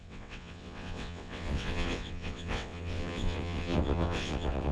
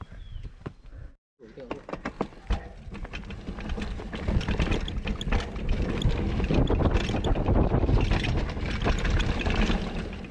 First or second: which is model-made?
first